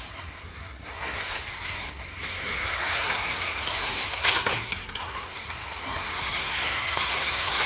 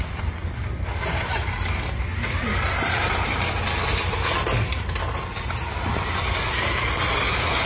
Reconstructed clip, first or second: first